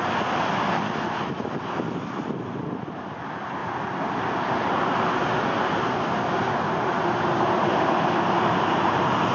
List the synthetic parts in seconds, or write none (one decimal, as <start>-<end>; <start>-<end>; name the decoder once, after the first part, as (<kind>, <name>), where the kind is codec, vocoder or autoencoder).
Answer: none